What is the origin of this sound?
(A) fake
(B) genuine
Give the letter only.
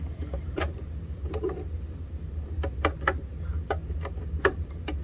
B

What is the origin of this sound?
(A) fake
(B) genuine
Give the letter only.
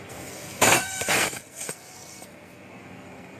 A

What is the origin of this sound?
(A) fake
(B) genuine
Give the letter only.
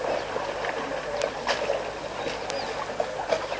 B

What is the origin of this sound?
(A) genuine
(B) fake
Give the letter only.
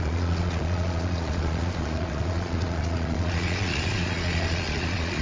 B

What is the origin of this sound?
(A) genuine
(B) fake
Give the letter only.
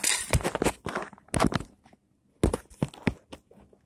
A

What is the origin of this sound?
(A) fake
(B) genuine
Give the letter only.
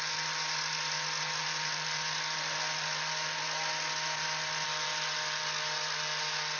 B